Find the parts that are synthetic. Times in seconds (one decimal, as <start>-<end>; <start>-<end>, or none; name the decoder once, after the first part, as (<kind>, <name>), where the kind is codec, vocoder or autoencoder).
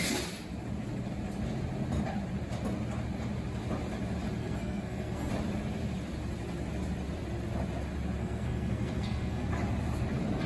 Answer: 4.4-5.3 (codec, SNAC); 8.2-9.5